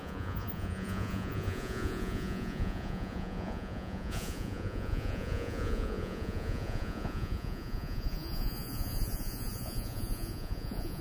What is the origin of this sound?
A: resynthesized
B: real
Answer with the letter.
A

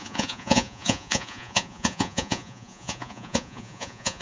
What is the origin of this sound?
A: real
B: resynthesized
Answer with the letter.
B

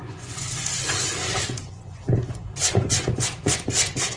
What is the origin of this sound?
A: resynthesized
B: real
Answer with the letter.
A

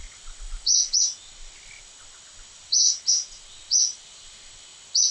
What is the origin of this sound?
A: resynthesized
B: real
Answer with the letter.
B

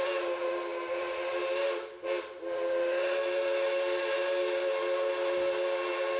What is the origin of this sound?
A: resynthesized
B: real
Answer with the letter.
B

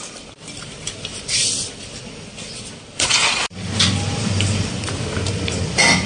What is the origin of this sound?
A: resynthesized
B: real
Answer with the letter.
B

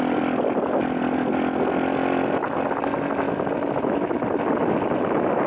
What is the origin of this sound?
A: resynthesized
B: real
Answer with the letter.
B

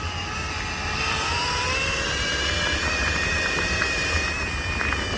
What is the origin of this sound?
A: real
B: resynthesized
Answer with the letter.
A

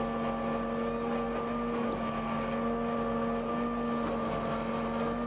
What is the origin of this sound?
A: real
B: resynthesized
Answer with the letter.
A